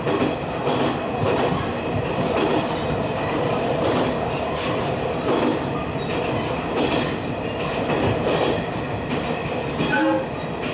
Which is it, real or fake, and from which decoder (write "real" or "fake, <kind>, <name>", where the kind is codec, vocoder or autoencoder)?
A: real